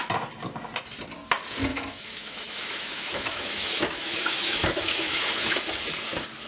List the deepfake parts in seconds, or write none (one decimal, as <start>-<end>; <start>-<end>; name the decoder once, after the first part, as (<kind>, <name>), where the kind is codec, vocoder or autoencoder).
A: 1.7-5.6 (autoencoder, DAC-VAE)

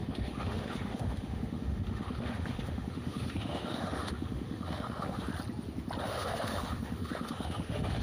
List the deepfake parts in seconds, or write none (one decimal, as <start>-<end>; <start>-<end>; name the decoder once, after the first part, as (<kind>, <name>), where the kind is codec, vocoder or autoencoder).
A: 0.0-5.3 (autoencoder, DAC-VAE); 6.0-8.0

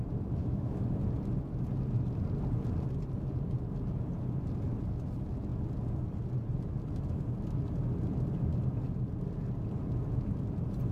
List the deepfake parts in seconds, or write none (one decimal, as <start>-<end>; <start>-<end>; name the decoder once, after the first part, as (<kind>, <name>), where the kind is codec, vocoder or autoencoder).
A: 0.4-0.9 (autoencoder, DAC-VAE)

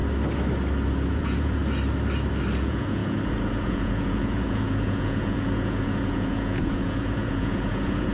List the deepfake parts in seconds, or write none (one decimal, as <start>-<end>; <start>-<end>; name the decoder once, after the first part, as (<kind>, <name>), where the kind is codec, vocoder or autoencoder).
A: 1.1-1.6 (vocoder, Vocos); 2.6-8.1

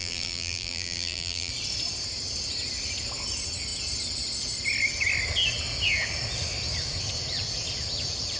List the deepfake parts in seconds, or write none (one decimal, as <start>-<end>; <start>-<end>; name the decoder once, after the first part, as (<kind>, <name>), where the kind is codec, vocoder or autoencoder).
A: 0.0-1.5 (vocoder, BigVGAN v2)

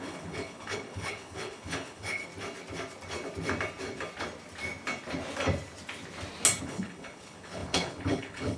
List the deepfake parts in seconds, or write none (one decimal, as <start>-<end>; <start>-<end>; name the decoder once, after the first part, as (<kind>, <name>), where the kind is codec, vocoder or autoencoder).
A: 0.0-2.3 (codec, HILCodec); 6.6-8.6